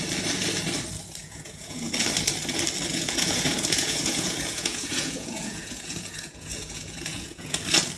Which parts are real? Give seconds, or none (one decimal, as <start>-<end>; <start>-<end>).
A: 0.0-1.2; 1.9-2.9; 7.6-8.0